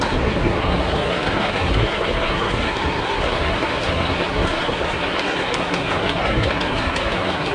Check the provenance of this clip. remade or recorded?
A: remade